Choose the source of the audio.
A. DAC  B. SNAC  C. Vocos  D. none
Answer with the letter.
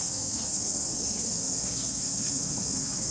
B